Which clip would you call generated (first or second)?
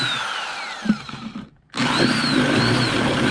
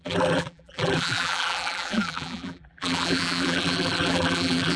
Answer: second